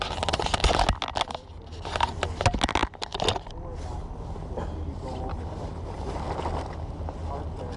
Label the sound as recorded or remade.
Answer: recorded